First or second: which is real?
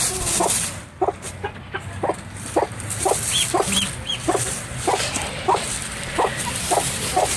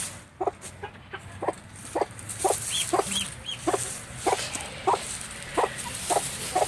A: second